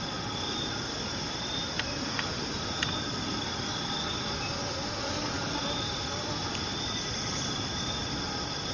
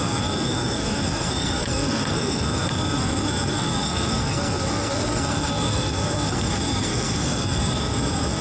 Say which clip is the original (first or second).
first